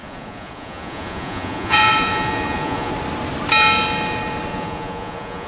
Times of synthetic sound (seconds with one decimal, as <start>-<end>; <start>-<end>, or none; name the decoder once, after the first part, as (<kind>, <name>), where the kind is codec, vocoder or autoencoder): 0.0-2.9 (vocoder, Vocos); 4.5-5.5

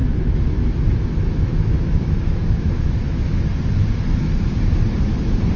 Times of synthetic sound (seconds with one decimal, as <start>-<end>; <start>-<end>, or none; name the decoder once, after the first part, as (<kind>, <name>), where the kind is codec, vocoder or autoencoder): 0.0-3.4 (autoencoder, DAC-VAE)

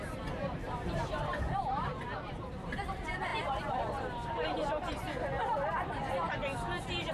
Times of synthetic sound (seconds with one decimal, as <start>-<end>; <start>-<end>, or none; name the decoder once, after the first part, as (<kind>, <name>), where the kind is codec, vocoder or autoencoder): 0.0-3.3 (vocoder, BigVGAN v2)

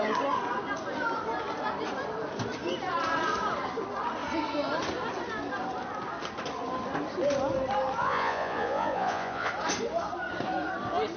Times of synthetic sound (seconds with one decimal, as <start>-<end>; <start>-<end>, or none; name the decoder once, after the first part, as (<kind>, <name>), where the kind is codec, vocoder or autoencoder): 8.0-9.5 (vocoder, Vocos)

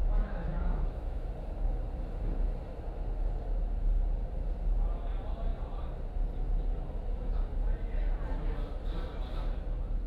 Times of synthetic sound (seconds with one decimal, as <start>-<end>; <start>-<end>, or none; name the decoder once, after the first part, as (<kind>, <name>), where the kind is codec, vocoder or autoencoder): 0.0-1.3 (autoencoder, DAC-VAE)

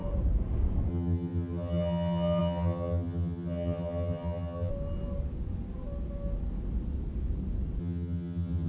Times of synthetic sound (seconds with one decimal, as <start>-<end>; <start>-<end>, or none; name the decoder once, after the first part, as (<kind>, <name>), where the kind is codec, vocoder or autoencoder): 0.9-4.7 (vocoder, HiFi-GAN); 7.8-8.7

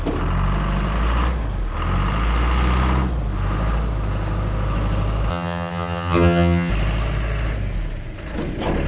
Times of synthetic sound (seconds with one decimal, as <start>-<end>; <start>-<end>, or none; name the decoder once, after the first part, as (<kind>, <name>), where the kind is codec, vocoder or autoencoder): 5.3-6.7 (vocoder, HiFi-GAN)